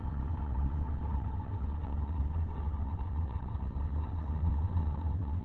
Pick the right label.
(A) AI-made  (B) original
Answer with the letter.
A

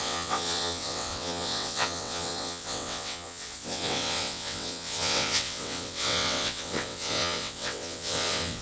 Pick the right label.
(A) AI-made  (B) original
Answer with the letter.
A